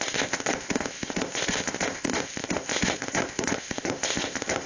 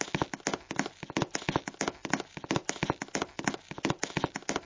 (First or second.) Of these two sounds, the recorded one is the second